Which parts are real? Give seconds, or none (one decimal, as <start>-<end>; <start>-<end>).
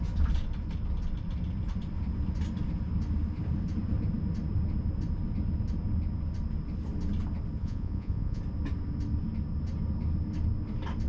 0.0-7.6; 8.4-11.1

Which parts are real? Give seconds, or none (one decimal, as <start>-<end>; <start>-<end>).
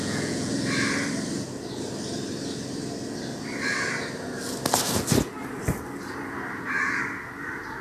0.5-7.8